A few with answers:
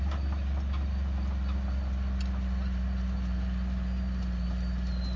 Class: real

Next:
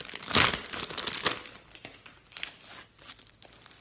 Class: real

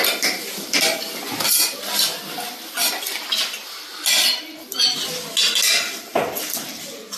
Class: real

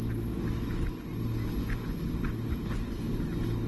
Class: real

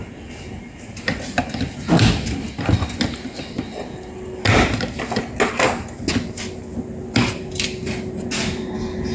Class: real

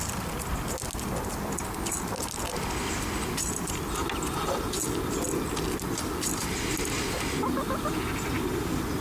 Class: real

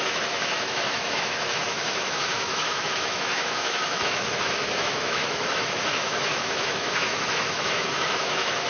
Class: fake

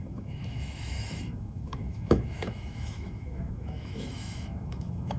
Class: fake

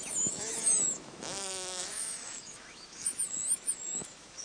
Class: fake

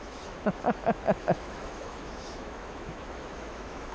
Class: fake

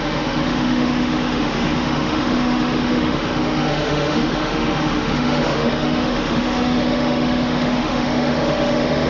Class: fake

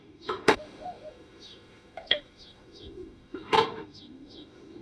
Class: fake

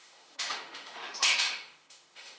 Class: fake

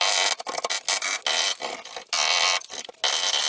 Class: real